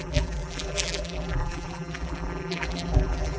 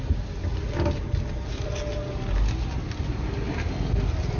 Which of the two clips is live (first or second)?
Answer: second